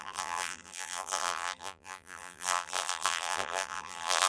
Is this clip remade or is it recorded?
remade